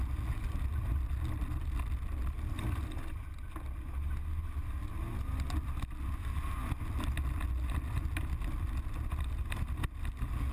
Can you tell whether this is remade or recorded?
recorded